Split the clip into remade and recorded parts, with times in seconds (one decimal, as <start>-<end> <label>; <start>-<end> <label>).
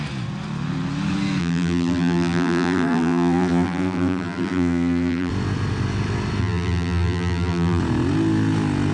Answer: 0.0-1.4 recorded; 1.4-5.3 remade; 5.3-6.4 recorded; 6.4-7.8 remade; 7.8-8.9 recorded